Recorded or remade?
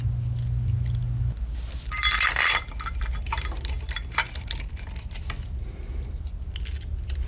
recorded